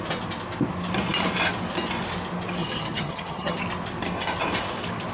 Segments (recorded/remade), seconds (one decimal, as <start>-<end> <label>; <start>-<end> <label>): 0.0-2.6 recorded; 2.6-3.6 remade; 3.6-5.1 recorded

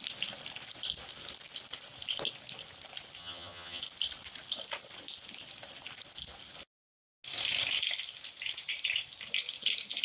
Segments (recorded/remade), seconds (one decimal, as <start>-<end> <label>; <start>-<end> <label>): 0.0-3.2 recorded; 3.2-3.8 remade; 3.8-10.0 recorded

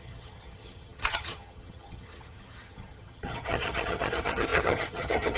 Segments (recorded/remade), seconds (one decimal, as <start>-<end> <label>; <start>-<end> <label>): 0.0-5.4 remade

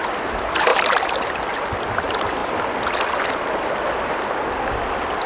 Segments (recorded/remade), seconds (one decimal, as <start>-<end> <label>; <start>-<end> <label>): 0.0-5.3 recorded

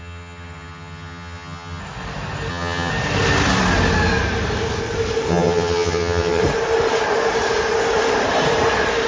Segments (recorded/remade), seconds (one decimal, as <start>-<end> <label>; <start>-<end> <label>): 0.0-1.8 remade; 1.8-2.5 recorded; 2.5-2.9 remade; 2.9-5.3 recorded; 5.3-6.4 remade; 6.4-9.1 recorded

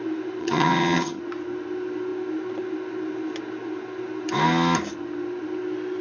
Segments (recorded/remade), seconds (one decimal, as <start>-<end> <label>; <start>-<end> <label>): 0.0-0.4 recorded; 0.4-1.2 remade; 1.2-6.0 recorded

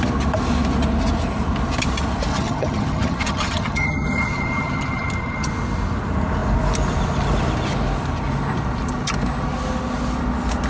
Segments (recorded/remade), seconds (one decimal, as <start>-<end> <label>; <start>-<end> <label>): 0.0-2.3 recorded; 2.3-5.5 remade; 5.5-10.7 recorded

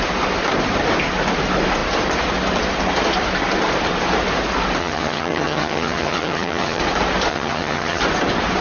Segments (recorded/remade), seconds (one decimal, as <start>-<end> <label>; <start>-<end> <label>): 0.0-4.8 recorded; 4.8-6.8 remade; 6.8-7.3 recorded; 7.3-8.0 remade; 8.0-8.6 recorded